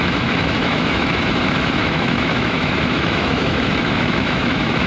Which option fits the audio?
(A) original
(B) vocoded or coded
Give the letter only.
B